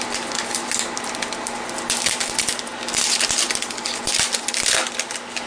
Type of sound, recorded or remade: recorded